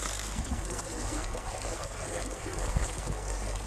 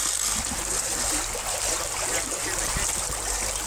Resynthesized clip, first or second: first